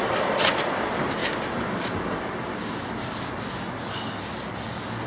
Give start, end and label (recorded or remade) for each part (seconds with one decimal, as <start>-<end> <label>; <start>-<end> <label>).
0.0-5.1 recorded

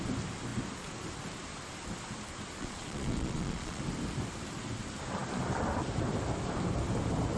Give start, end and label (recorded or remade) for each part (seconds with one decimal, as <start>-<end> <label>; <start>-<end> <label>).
0.0-2.6 recorded; 2.6-3.8 remade; 3.8-7.4 recorded

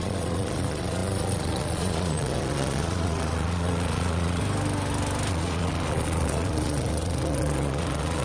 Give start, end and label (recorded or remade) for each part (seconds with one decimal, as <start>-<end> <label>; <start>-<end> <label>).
0.0-4.4 remade; 4.4-5.3 recorded; 5.3-8.2 remade

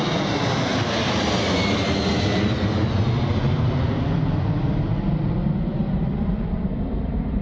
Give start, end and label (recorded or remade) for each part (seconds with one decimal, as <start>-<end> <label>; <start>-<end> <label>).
0.0-7.4 recorded

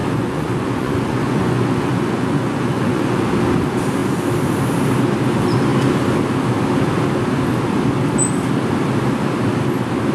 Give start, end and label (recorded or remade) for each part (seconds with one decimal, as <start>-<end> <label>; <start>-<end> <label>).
0.0-3.3 remade; 3.3-10.1 recorded

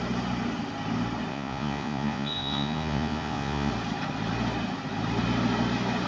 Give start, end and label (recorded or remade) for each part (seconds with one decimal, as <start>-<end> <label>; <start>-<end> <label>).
0.0-1.3 recorded; 1.3-3.7 remade; 3.7-6.1 recorded